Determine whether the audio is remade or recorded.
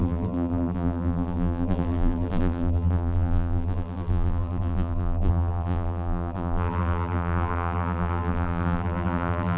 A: remade